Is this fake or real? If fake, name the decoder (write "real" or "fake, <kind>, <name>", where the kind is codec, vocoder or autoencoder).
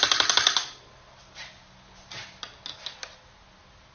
real